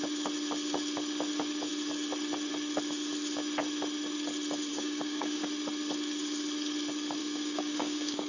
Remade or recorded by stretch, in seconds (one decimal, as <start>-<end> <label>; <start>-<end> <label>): 0.0-4.7 recorded; 4.7-5.4 remade; 5.4-7.2 recorded; 7.2-8.3 remade